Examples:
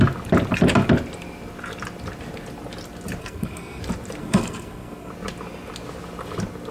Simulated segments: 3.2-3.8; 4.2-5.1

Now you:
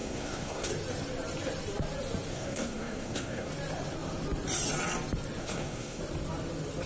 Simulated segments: 0.0-0.7; 2.3-3.5; 5.4-6.0

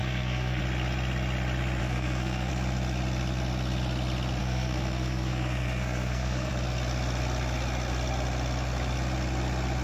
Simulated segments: 0.0-0.6; 1.8-2.5; 4.4-6.5

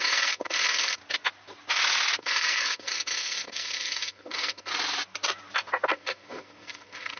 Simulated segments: 0.0-1.0; 2.2-4.7; 5.9-7.2

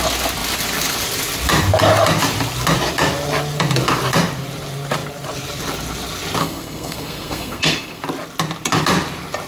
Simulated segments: 6.4-8.0

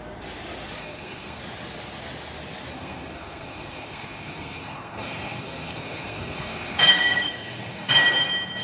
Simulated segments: 0.8-1.4; 2.7-7.9

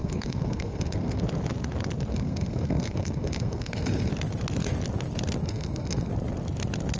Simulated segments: 0.0-1.2; 2.1-4.1; 5.4-6.1

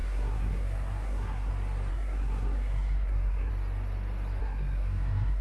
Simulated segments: 0.0-1.5; 1.9-3.5; 4.4-5.4